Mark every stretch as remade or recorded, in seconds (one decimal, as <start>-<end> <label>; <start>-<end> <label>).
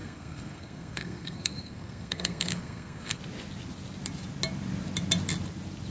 0.0-3.2 remade; 3.2-5.9 recorded